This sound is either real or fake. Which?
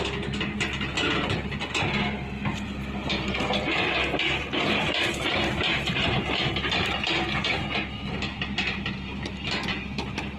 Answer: real